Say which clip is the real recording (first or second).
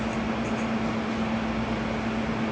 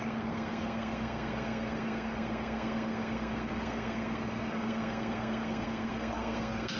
first